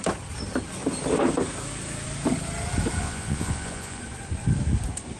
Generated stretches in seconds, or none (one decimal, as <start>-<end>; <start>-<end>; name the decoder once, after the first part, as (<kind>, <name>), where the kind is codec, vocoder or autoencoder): 3.0-4.0 (vocoder, Vocos)